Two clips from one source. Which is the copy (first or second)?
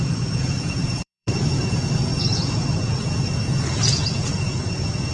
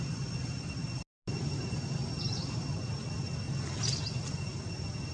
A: first